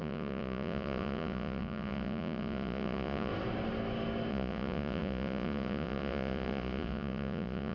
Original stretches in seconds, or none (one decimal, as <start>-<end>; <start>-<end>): 3.3-4.3